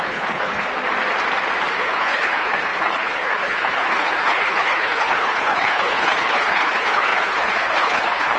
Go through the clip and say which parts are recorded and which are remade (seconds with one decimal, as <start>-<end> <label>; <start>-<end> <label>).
0.0-0.7 remade; 0.7-1.7 recorded; 1.7-8.4 remade